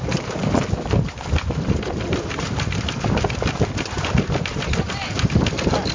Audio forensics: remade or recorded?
recorded